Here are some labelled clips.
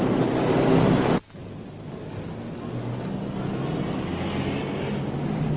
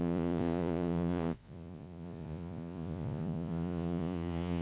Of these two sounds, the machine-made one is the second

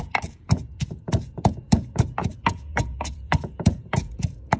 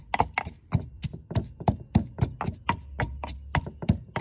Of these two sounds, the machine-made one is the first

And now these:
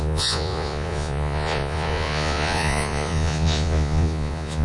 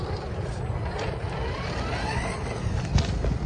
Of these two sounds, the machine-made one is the first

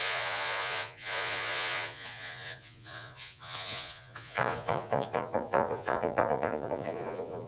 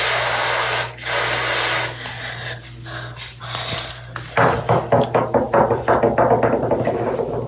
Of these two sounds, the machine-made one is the first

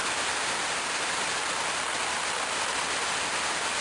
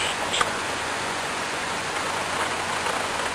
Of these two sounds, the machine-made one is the second